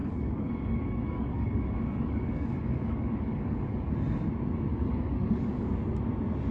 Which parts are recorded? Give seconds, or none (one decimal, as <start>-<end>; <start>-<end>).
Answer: 3.9-4.7; 5.7-6.5